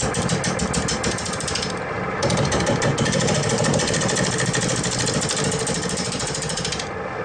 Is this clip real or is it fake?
real